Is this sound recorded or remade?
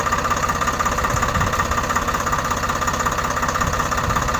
recorded